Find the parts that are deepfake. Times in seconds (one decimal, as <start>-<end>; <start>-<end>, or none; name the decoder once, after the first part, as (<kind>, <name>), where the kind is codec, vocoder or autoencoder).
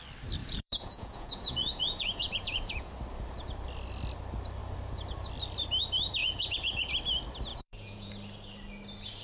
0.4-2.9 (vocoder, Vocos); 6.2-6.9; 7.5-8.1